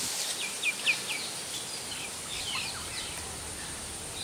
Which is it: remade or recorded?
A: recorded